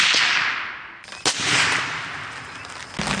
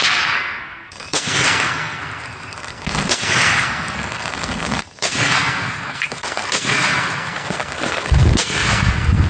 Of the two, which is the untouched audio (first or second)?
first